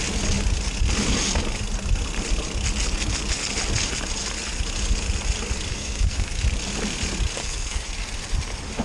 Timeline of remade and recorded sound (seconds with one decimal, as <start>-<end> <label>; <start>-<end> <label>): 0.0-5.7 recorded; 5.7-6.4 remade; 6.4-7.4 recorded; 7.4-7.9 remade; 7.9-8.8 recorded